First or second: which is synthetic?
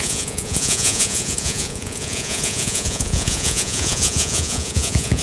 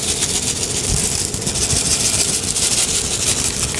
first